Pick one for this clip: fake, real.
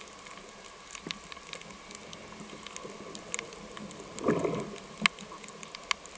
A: real